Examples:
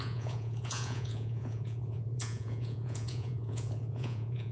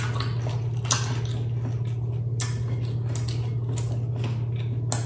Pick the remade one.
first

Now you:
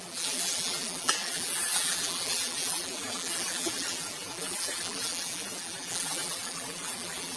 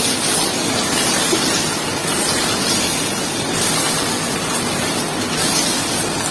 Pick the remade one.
first